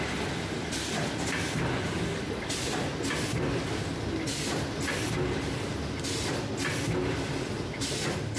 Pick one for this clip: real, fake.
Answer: real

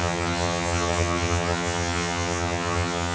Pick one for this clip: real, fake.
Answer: fake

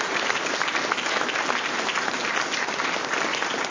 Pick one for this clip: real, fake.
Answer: real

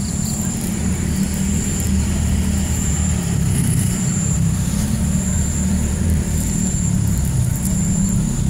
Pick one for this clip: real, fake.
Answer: fake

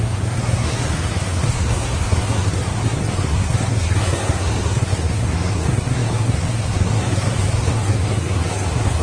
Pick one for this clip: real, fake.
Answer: fake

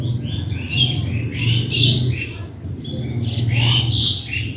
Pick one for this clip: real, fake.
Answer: real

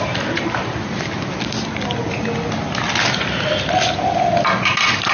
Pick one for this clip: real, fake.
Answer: real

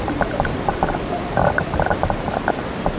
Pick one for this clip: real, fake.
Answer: fake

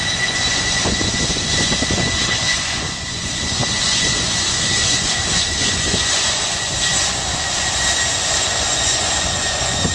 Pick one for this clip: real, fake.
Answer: fake